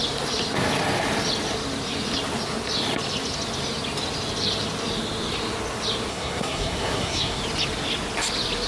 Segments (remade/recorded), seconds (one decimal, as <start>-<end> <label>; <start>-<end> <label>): 0.0-6.1 recorded; 6.1-7.4 remade; 7.4-8.7 recorded